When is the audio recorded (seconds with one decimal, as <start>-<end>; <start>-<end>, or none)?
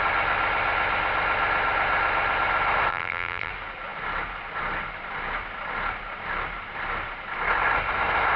0.0-2.9; 3.5-8.4